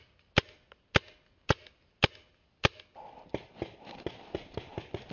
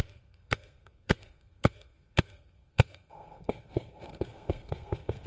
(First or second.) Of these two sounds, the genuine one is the first